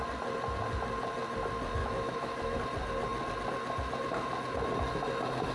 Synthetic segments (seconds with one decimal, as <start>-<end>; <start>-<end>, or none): 1.8-2.6